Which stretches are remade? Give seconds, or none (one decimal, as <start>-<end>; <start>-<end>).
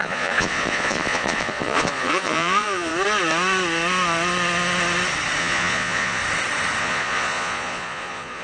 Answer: 0.0-2.9; 5.4-6.2; 6.8-8.4